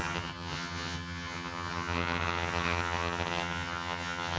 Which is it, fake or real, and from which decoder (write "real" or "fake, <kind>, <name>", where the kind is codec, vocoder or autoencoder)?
fake, vocoder, HiFi-GAN